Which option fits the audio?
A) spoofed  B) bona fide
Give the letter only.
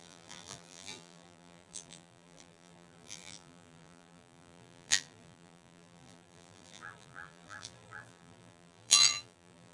A